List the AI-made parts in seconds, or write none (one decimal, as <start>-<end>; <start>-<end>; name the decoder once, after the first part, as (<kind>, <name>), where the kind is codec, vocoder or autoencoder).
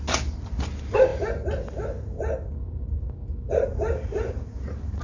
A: none